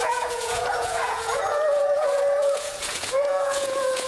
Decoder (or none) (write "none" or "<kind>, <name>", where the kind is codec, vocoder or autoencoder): vocoder, Vocos